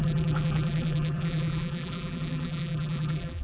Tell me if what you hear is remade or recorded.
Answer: remade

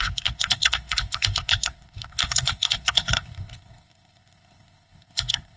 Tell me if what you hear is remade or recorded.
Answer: remade